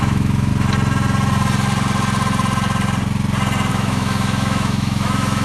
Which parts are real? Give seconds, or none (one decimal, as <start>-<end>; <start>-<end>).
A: 0.5-3.7